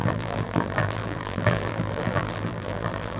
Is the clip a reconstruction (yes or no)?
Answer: yes